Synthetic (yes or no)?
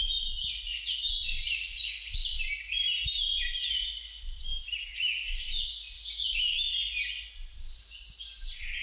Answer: no